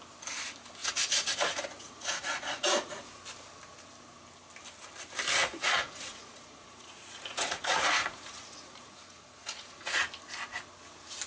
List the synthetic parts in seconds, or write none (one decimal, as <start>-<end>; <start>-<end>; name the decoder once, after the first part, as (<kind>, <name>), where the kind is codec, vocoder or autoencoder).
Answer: 0.8-3.0 (vocoder, Vocos); 5.4-10.0